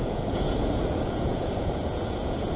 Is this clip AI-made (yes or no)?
yes